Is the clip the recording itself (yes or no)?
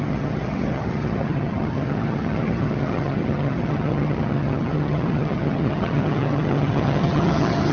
no